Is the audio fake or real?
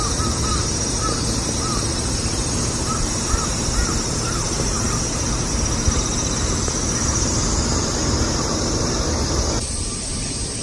fake